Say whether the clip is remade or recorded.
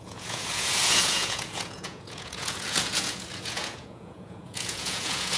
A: remade